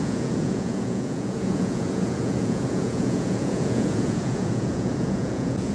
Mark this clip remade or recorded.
remade